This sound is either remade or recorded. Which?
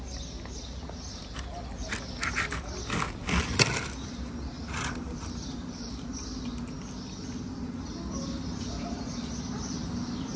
recorded